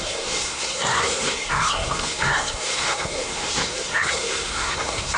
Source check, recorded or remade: remade